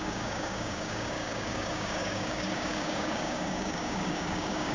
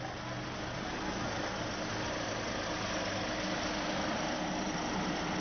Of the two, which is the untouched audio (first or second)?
second